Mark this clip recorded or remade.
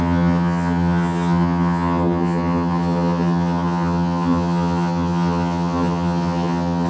remade